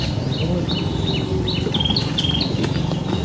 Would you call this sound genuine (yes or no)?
yes